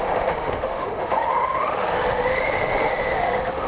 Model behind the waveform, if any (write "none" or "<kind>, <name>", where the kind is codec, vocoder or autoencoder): autoencoder, DAC-VAE